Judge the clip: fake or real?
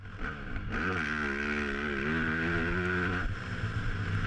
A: real